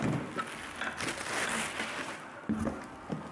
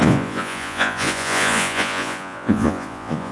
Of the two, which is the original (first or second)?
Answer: first